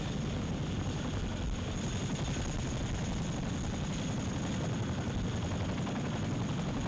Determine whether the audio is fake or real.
real